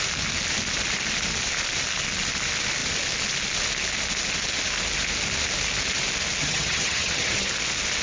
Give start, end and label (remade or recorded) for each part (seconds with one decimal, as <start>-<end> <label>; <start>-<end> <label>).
0.0-6.4 recorded; 6.4-7.5 remade; 7.5-8.0 recorded

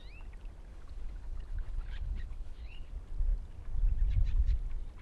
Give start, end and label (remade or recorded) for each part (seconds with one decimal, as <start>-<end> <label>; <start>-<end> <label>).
0.0-0.7 recorded; 0.7-2.9 remade; 2.9-5.0 recorded

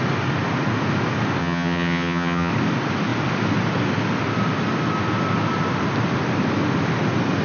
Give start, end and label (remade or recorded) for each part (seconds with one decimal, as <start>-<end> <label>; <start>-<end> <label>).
0.0-1.4 recorded; 1.4-2.5 remade; 2.5-7.4 recorded

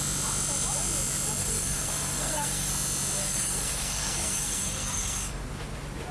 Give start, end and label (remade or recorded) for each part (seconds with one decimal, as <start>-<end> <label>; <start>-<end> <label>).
0.0-1.4 recorded; 1.4-2.7 remade; 2.7-3.2 recorded; 3.2-5.4 remade; 5.4-6.1 recorded

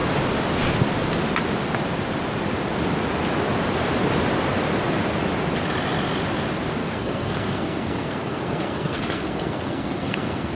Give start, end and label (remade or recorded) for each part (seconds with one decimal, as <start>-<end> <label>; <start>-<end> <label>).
0.0-6.8 recorded; 6.8-10.5 remade

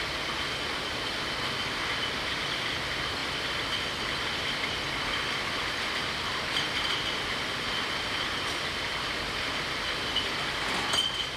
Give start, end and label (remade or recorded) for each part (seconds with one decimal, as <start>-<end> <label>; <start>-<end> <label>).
0.0-11.4 recorded